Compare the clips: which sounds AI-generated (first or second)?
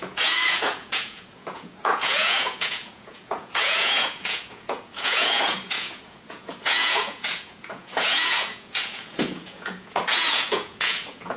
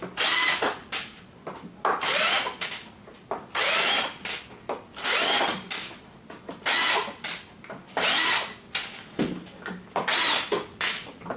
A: first